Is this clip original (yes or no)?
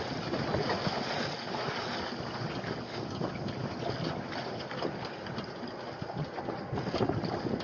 yes